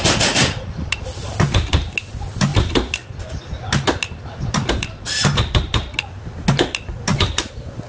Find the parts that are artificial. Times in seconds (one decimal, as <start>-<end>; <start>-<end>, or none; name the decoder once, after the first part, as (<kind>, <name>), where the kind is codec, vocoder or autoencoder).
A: none

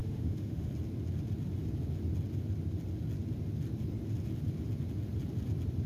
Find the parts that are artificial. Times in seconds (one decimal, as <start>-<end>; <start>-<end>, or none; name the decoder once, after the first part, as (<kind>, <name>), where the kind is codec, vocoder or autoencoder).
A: 0.0-0.7 (autoencoder, DAC-VAE)